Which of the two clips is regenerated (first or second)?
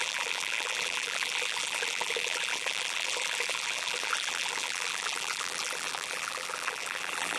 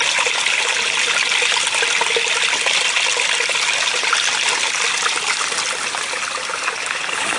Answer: first